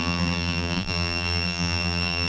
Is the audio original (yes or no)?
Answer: no